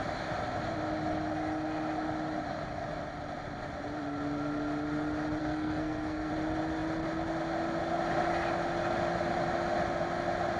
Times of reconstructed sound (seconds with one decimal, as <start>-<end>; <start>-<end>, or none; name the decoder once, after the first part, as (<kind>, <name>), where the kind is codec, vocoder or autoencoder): 5.4-6.3 (codec, SNAC)